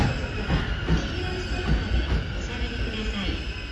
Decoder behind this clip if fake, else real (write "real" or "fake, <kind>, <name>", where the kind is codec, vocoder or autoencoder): real